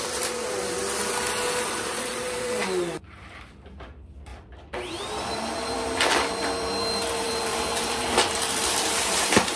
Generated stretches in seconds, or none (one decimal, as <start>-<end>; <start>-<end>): 0.0-1.0; 1.8-4.3; 5.0-9.6